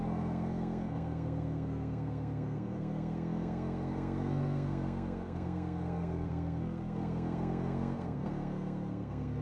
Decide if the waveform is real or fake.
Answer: fake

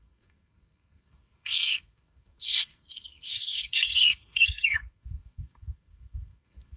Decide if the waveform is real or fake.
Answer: fake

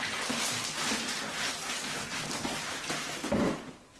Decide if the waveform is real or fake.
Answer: real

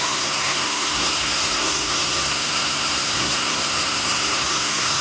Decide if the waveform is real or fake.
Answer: fake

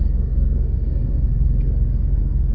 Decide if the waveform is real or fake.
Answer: fake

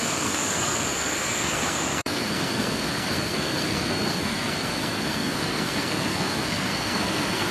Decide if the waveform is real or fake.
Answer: fake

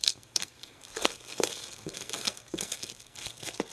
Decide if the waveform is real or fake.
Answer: fake